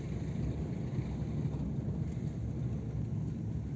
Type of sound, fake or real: real